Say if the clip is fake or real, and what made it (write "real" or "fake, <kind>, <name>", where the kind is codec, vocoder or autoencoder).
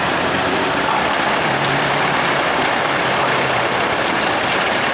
fake, vocoder, BigVGAN v2